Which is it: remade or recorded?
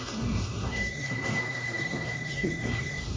remade